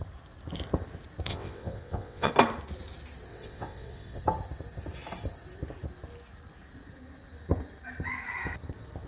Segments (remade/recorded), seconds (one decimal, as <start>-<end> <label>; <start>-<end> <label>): 0.0-1.3 recorded; 1.3-2.3 remade; 2.3-3.3 recorded; 3.3-4.2 remade; 4.2-9.1 recorded